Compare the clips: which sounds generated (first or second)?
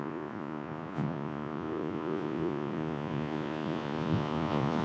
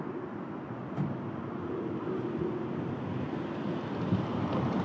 first